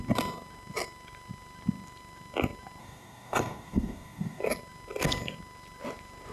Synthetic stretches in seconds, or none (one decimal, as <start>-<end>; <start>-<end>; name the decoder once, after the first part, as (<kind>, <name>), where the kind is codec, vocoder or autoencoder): 2.8-4.4 (codec, DAC)